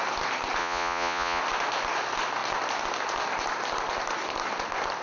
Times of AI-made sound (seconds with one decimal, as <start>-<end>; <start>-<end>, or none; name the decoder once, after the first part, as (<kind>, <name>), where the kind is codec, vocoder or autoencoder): 0.6-1.4 (vocoder, Vocos)